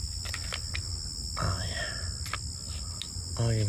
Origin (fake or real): real